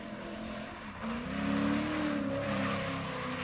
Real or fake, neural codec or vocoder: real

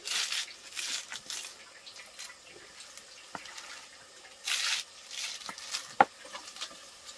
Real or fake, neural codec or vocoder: real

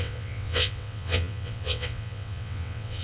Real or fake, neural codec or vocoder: fake, vocoder, WaveNeXt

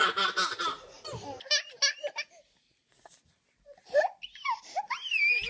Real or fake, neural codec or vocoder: real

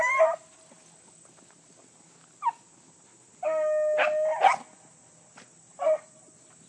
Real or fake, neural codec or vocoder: real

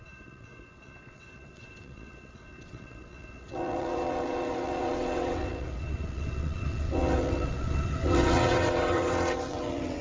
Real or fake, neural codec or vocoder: fake, vocoder, WaveNeXt